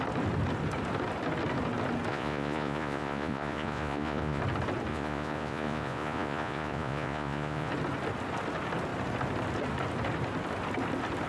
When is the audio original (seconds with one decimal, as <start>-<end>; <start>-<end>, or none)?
0.0-2.1; 4.4-4.9; 7.7-11.3